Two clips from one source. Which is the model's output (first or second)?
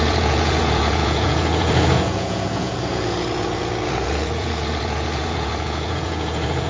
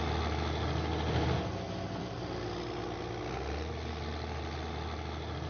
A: first